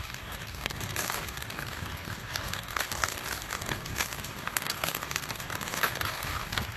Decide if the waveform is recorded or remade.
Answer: remade